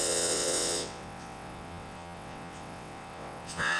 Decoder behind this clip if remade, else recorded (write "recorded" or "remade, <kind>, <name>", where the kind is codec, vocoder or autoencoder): remade, vocoder, WaveNeXt